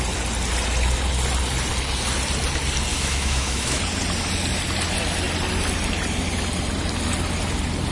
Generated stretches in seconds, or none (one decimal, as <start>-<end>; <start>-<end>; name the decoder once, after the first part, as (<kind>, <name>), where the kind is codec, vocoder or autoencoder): 2.9-3.8 (autoencoder, DAC-VAE)